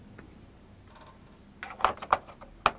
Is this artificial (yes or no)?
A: no